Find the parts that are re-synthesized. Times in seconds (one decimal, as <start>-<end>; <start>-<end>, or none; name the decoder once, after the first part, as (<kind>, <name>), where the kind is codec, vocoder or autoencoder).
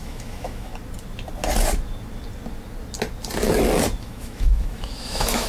0.0-0.7 (autoencoder, DAC-VAE); 4.0-5.5